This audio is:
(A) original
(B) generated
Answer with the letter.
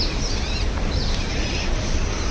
A